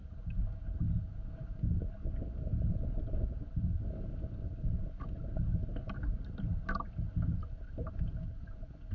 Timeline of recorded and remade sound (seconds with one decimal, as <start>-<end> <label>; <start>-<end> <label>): 0.0-8.9 recorded